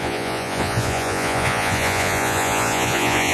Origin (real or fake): fake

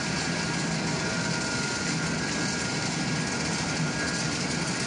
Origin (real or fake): real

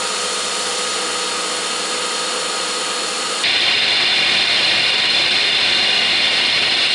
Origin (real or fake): real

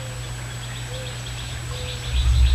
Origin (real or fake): real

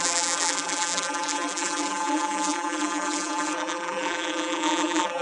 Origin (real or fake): fake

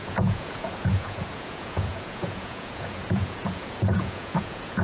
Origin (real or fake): fake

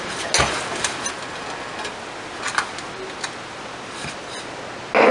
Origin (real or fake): real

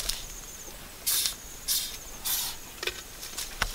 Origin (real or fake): real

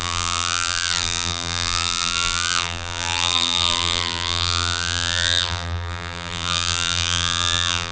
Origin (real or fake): fake